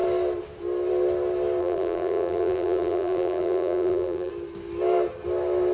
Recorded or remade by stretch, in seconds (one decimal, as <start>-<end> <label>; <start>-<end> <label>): 0.0-1.6 recorded; 1.6-4.3 remade; 4.3-5.7 recorded